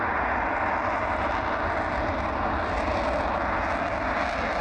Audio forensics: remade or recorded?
recorded